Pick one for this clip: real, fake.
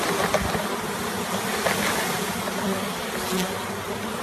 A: real